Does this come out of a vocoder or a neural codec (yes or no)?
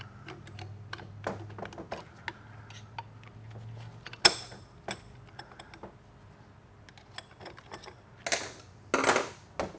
no